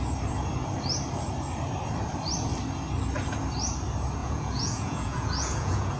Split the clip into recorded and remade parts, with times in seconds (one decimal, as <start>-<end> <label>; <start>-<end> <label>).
0.0-4.2 recorded; 4.2-6.0 remade

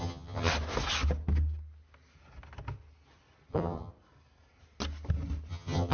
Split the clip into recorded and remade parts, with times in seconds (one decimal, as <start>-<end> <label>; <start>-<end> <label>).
0.0-0.5 remade; 0.5-3.5 recorded; 3.5-3.9 remade; 3.9-5.5 recorded; 5.5-5.9 remade

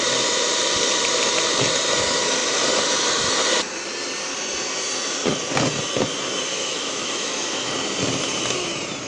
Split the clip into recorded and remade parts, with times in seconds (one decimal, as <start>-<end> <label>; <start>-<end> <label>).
0.0-6.5 recorded; 6.5-7.7 remade; 7.7-9.1 recorded

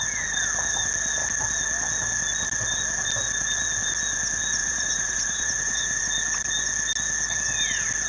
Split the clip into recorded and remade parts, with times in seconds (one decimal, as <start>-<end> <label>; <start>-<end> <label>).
0.0-4.6 recorded; 4.6-6.0 remade; 6.0-8.1 recorded

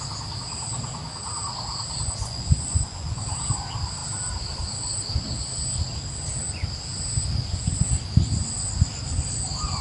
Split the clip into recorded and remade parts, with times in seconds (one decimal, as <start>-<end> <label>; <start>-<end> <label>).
0.0-2.2 recorded; 2.2-3.2 remade; 3.2-9.8 recorded